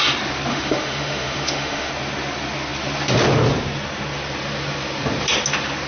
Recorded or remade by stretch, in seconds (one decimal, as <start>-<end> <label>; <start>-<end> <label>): 0.0-0.5 recorded; 0.5-1.9 remade; 1.9-5.9 recorded